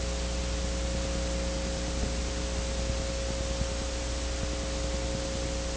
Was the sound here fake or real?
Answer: real